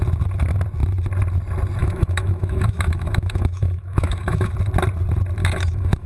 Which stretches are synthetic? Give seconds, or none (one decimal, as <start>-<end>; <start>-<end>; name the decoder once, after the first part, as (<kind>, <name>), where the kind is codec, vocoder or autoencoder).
1.8-4.5 (autoencoder, DAC-VAE); 5.4-6.1